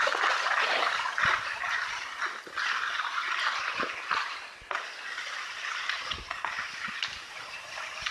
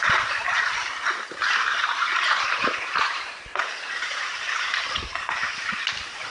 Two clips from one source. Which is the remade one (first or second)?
second